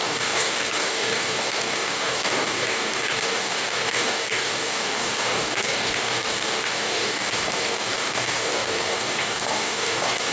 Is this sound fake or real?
fake